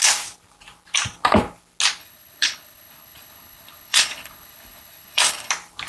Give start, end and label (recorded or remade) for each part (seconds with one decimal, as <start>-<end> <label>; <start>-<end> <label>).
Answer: 0.0-2.0 recorded; 2.0-5.5 remade; 5.5-5.9 recorded